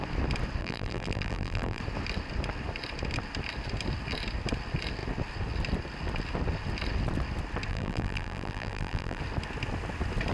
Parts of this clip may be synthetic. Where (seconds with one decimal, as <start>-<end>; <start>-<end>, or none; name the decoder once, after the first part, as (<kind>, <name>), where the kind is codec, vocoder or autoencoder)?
0.6-1.8 (vocoder, BigVGAN v2); 7.7-9.2